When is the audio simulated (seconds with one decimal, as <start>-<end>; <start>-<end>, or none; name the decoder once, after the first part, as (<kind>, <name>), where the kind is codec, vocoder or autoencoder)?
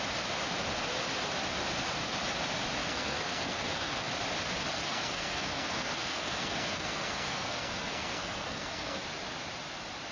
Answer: 2.8-4.1 (codec, SNAC); 4.7-9.0